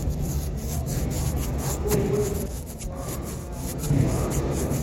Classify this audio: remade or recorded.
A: recorded